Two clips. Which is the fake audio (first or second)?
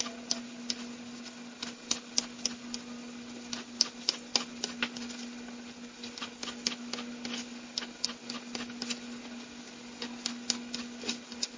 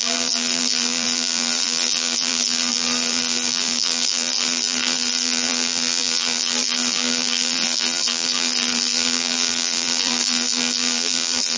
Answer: second